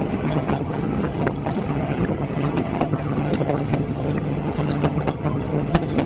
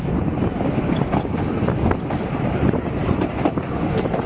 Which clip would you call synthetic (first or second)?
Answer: first